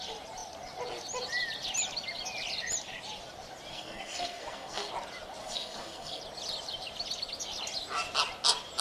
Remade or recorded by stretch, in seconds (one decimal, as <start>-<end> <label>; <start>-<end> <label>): 0.0-3.7 recorded; 3.7-4.9 remade; 4.9-5.4 recorded; 5.4-6.2 remade; 6.2-8.8 recorded